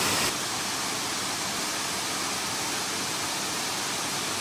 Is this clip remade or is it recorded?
recorded